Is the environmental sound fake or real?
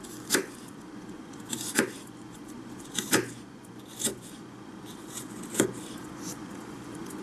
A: fake